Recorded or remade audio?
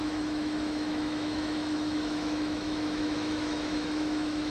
remade